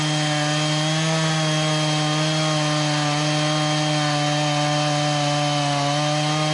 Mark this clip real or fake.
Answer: real